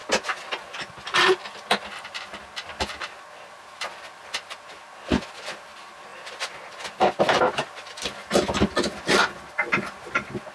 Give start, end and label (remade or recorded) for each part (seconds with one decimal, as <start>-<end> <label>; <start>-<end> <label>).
0.0-10.5 recorded